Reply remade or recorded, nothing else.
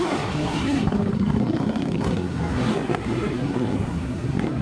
remade